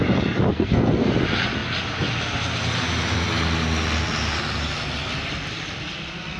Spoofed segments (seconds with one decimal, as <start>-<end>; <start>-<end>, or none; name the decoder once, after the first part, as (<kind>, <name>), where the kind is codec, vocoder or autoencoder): 0.5-1.1 (codec, SNAC)